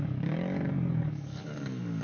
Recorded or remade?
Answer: remade